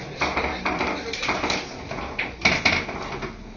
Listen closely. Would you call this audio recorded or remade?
recorded